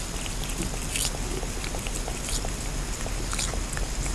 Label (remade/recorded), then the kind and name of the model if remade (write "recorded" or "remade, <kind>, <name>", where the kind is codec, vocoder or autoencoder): recorded